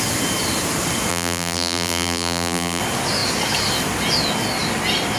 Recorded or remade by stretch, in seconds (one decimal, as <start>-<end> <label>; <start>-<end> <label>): 0.0-1.1 recorded; 1.1-2.8 remade; 2.8-5.2 recorded